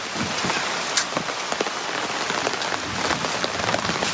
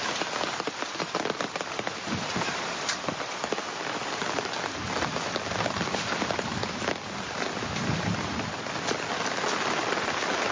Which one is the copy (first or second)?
second